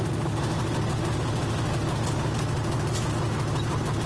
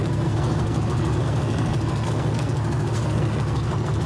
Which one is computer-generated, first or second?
second